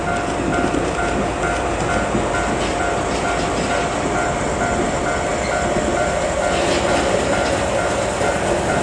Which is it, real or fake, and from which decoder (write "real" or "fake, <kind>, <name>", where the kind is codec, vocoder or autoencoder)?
real